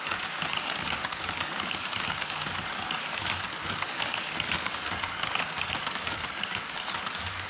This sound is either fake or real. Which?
fake